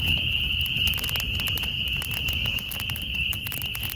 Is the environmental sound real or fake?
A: real